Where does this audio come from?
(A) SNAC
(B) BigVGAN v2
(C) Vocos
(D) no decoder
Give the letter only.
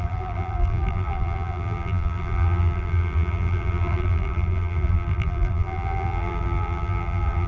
B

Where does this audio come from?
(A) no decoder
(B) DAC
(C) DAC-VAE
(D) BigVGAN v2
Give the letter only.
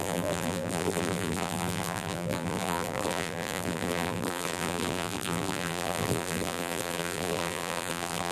D